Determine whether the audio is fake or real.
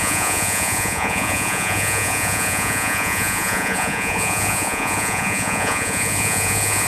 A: fake